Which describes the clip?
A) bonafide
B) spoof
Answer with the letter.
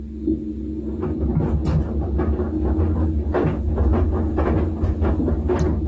A